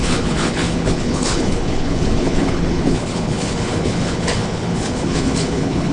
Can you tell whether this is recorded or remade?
remade